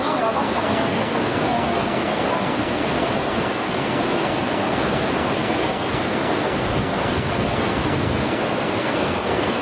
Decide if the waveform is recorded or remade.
remade